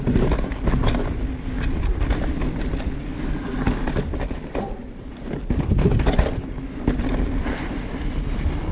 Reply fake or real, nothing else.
real